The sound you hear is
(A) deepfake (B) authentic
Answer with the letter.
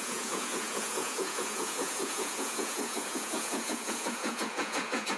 A